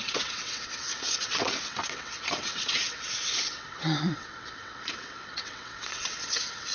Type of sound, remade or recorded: remade